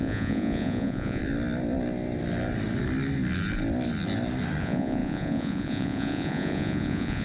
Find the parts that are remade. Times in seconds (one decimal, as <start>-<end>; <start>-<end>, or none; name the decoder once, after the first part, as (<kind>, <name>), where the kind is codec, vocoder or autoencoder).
0.0-1.2 (vocoder, Vocos); 4.6-7.2